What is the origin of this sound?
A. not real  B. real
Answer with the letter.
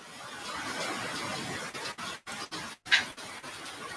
B